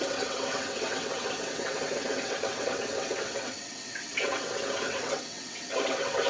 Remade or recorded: remade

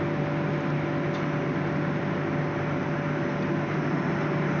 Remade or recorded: recorded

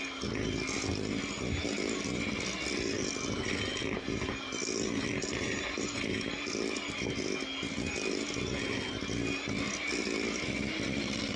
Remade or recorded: recorded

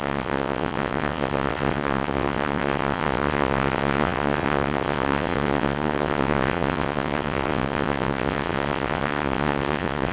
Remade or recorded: remade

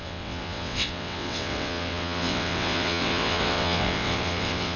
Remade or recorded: remade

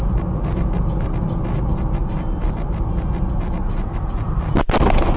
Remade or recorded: recorded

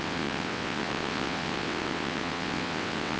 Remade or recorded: remade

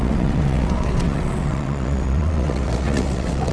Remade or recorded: remade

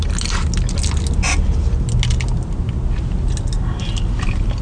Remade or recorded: recorded